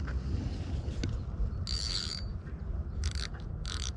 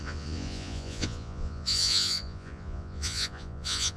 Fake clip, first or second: second